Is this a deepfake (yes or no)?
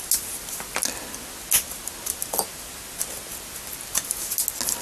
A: no